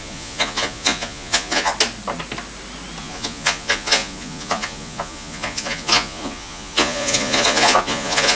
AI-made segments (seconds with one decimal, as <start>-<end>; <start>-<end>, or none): 0.0-1.7; 3.0-8.3